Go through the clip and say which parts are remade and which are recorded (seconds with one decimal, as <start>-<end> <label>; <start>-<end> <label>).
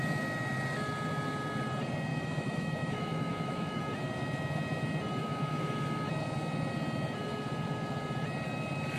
0.0-2.1 recorded; 2.1-3.8 remade; 3.8-5.2 recorded; 5.2-6.1 remade; 6.1-9.0 recorded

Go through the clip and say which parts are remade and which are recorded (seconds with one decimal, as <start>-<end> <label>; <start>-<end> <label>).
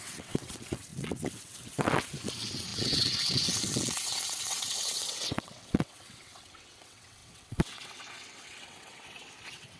0.0-9.8 remade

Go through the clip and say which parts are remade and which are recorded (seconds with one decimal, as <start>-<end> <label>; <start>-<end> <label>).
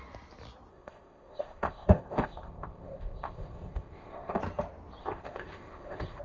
0.0-0.7 recorded; 0.7-4.4 remade; 4.4-5.0 recorded; 5.0-6.2 remade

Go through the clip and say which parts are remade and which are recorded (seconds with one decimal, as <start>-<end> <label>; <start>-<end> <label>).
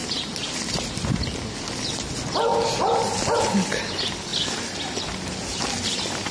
0.0-6.3 recorded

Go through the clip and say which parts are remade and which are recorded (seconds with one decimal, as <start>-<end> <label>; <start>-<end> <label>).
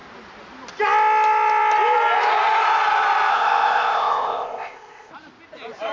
0.0-3.3 recorded; 3.3-5.1 remade; 5.1-5.9 recorded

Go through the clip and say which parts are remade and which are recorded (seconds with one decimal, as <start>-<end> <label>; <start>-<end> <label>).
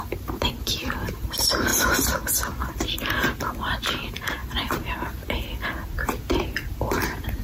0.0-1.7 remade; 1.7-3.9 recorded; 3.9-4.4 remade; 4.4-6.8 recorded; 6.8-7.4 remade